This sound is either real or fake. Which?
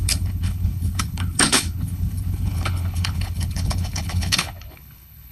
fake